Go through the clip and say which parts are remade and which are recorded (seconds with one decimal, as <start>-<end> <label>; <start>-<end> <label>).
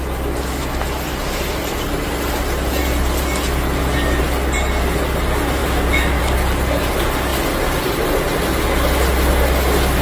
0.0-5.6 recorded; 5.6-6.2 remade; 6.2-10.0 recorded